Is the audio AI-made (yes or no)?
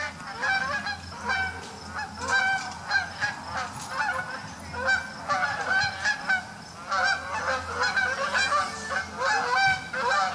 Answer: no